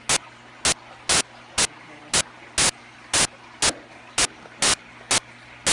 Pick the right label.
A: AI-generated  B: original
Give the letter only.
B